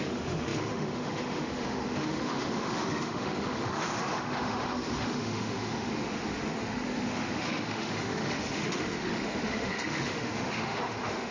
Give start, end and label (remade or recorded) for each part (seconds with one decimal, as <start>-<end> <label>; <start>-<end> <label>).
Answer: 0.0-11.3 remade